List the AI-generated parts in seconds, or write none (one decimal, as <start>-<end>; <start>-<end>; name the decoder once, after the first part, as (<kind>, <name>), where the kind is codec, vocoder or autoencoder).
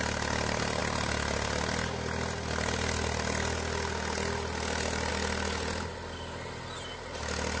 none